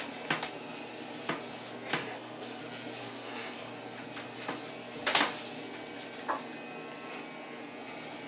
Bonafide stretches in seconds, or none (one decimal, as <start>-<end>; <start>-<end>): 0.0-2.0; 2.6-3.0; 3.7-8.3